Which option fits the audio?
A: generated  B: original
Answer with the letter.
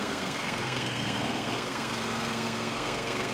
A